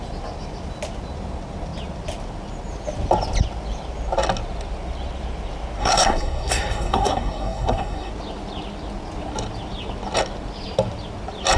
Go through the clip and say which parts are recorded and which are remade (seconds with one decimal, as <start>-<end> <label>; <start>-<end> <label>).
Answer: 0.0-5.8 recorded; 5.8-8.1 remade; 8.1-11.6 recorded

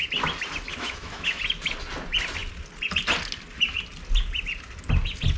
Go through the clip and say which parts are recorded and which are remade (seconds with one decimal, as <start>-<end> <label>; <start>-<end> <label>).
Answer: 0.0-0.7 recorded; 0.7-1.4 remade; 1.4-5.4 recorded

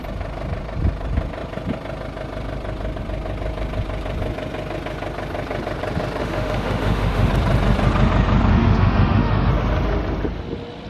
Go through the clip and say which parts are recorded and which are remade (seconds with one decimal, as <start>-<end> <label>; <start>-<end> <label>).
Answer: 0.0-6.2 recorded; 6.2-7.3 remade; 7.3-8.5 recorded; 8.5-9.5 remade; 9.5-10.9 recorded

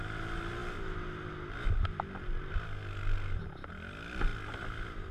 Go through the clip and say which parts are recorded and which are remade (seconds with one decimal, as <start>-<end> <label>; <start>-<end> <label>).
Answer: 0.0-5.1 recorded

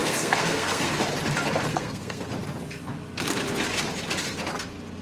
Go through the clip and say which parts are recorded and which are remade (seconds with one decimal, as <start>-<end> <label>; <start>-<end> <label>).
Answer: 0.0-0.9 remade; 0.9-1.7 recorded; 1.7-2.3 remade; 2.3-5.0 recorded

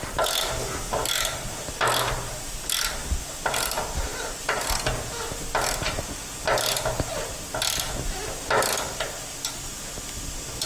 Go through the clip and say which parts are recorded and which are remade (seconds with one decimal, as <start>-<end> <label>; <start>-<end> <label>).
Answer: 0.0-10.7 recorded

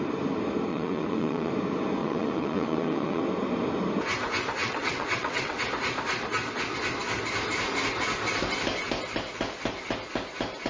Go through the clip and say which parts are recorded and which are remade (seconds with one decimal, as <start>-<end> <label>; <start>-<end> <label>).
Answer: 0.0-0.7 recorded; 0.7-1.5 remade; 1.5-2.0 recorded; 2.0-3.2 remade; 3.2-4.6 recorded; 4.6-5.6 remade; 5.6-10.7 recorded

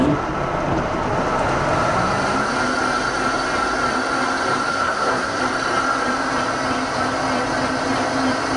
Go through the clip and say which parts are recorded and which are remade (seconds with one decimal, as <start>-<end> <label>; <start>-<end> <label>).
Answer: 0.0-4.7 recorded; 4.7-5.4 remade; 5.4-8.6 recorded